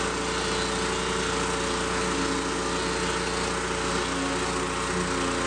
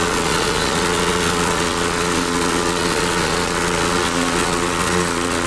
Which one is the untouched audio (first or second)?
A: first